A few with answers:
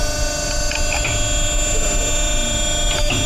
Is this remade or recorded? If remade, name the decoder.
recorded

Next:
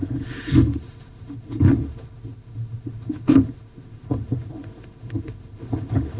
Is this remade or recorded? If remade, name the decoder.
remade, autoencoder, DAC-VAE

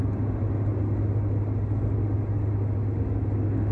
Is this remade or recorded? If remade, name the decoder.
recorded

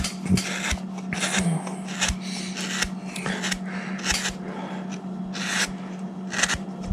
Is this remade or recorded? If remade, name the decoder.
recorded